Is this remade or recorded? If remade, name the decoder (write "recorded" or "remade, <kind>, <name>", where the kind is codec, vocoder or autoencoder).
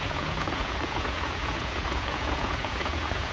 remade, vocoder, Vocos